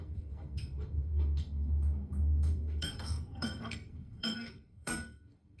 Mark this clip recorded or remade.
remade